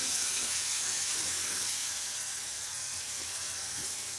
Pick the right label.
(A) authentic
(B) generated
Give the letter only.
B